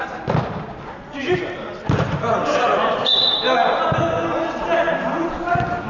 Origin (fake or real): real